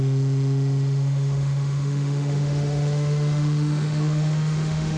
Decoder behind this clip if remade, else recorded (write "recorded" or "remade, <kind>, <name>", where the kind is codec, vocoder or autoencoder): remade, autoencoder, DAC-VAE